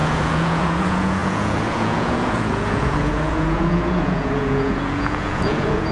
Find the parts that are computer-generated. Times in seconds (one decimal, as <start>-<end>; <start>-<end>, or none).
0.0-5.9